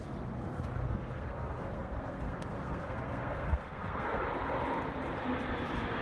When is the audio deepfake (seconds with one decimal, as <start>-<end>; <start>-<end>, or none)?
0.8-4.2